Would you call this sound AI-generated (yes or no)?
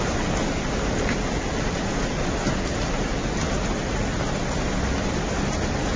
no